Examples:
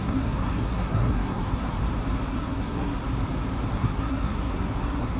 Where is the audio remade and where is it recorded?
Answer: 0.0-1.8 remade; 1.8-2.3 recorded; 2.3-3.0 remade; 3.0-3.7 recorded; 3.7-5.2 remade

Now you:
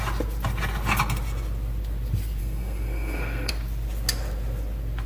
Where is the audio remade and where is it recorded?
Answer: 0.0-2.4 recorded; 2.4-3.5 remade; 3.5-5.1 recorded

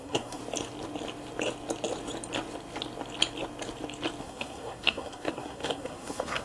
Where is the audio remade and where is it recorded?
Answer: 0.0-0.4 remade; 0.4-4.2 recorded; 4.2-6.4 remade

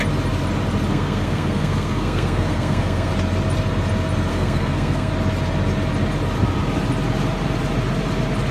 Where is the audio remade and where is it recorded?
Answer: 0.0-0.9 recorded; 0.9-3.1 remade; 3.1-4.3 recorded; 4.3-5.1 remade; 5.1-8.5 recorded

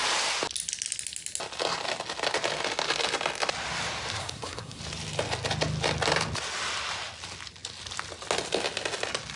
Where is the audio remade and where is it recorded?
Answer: 0.0-4.2 recorded; 4.2-4.8 remade; 4.8-9.4 recorded

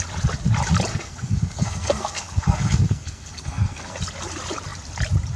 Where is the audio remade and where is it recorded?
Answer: 0.0-0.9 recorded; 0.9-4.0 remade; 4.0-5.4 recorded